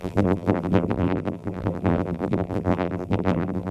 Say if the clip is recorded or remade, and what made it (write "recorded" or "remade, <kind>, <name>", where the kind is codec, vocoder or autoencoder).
remade, vocoder, BigVGAN v2